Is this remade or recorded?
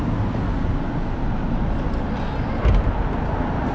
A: recorded